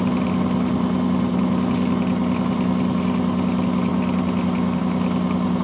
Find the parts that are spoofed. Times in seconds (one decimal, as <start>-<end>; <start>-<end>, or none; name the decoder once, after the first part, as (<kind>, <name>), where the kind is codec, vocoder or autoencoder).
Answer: none